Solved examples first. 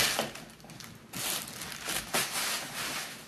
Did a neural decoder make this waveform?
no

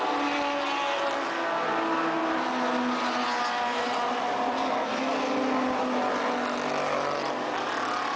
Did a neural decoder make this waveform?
no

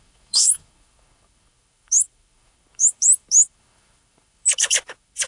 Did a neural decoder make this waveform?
yes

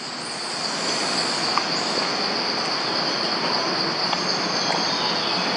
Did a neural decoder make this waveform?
no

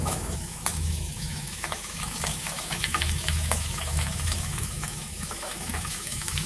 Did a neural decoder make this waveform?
yes